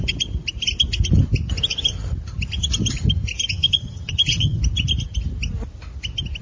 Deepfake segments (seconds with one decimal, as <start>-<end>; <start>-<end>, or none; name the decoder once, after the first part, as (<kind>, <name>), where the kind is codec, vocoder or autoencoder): 3.5-4.6 (vocoder, HiFi-GAN)